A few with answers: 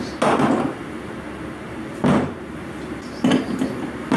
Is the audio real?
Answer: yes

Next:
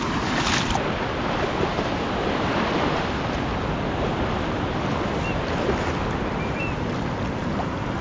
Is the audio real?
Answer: yes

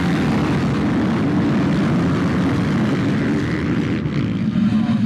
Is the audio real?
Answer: yes